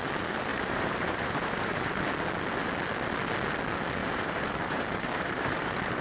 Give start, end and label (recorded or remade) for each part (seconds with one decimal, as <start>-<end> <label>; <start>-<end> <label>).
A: 0.0-0.5 recorded; 0.5-1.9 remade; 1.9-4.0 recorded; 4.0-6.0 remade